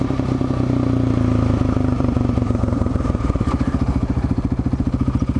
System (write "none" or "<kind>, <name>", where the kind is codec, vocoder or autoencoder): vocoder, BigVGAN v2